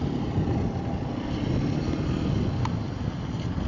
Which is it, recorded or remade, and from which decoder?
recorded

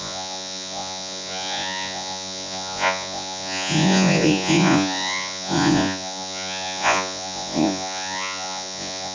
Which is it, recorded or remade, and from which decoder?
remade, vocoder, Vocos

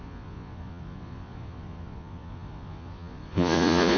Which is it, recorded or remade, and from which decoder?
remade, vocoder, Vocos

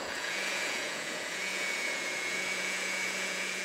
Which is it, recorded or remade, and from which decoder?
remade, vocoder, Vocos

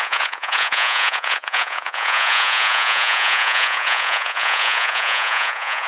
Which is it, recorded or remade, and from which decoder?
remade, vocoder, Vocos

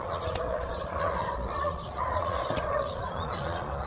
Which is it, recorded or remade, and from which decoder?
remade, vocoder, Vocos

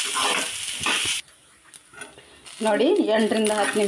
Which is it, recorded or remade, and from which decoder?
recorded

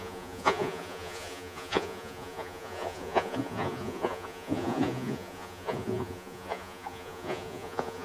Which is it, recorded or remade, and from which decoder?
remade, vocoder, Vocos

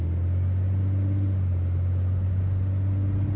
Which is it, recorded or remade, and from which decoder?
recorded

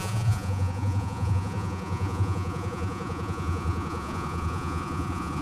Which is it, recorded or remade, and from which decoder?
remade, vocoder, Vocos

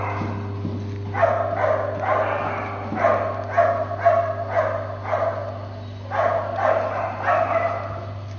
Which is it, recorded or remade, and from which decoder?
recorded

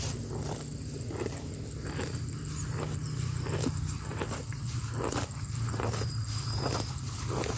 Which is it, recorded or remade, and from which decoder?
recorded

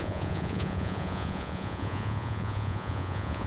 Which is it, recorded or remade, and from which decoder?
remade, vocoder, Vocos